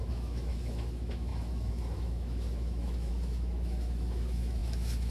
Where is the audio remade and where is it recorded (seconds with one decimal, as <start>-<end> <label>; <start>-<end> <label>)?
0.0-5.1 remade